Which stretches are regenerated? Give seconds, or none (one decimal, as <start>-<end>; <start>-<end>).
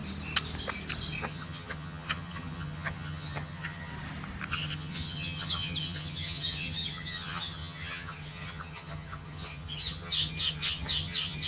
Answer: 1.2-3.9; 4.5-11.5